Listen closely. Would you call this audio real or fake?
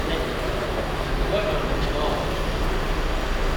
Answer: real